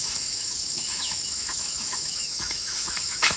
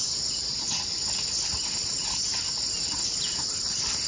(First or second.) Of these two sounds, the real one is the second